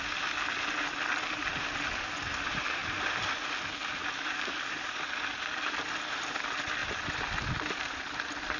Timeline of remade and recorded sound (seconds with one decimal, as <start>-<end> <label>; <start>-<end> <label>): 0.0-8.6 recorded